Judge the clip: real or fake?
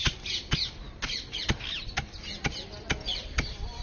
real